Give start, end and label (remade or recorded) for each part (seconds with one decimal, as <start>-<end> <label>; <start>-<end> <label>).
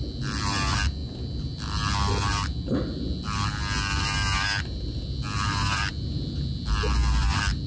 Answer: 0.0-7.7 recorded